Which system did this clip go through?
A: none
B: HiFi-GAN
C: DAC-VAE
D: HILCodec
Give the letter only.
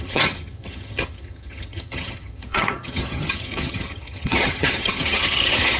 B